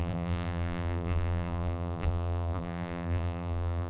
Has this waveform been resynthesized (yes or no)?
yes